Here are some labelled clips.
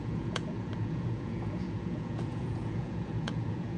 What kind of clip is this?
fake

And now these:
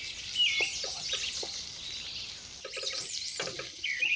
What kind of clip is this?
real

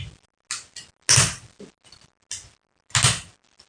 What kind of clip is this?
real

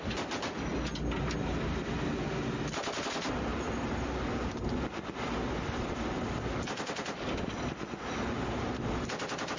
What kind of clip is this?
real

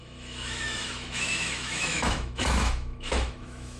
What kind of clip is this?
fake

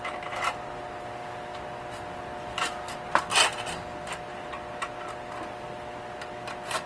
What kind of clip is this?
real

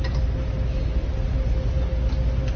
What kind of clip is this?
real